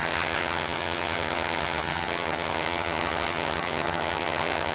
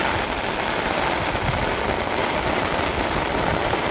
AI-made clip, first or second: first